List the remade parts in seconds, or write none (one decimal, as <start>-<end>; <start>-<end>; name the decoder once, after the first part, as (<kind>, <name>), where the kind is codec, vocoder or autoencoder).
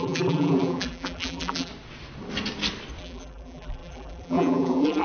0.0-1.7 (vocoder, BigVGAN v2); 3.0-5.0